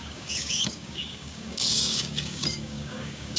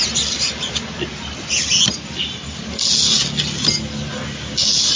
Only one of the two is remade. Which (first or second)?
first